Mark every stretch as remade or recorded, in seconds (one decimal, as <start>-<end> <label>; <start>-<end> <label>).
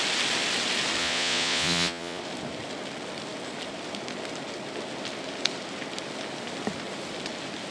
0.0-1.0 recorded; 1.0-2.2 remade; 2.2-7.7 recorded